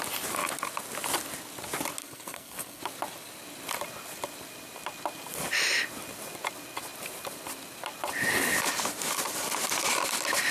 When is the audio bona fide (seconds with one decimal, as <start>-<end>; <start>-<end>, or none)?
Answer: 0.0-2.0; 2.8-10.5